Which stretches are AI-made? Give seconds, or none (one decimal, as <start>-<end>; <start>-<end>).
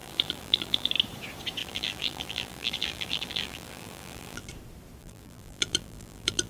0.0-0.9; 1.6-4.5; 5.0-6.5